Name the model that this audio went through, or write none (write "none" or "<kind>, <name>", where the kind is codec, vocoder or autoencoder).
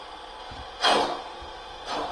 none